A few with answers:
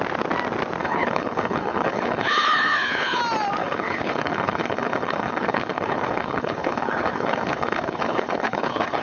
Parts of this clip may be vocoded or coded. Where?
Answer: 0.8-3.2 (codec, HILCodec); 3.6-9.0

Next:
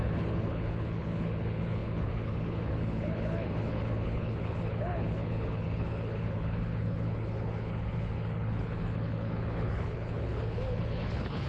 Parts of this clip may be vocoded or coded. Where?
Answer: 0.0-11.5 (codec, HILCodec)